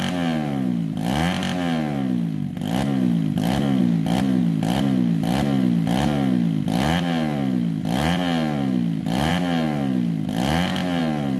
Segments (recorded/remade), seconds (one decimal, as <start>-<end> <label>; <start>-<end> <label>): 0.0-11.4 recorded